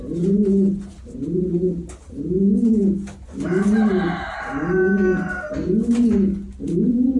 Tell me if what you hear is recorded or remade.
recorded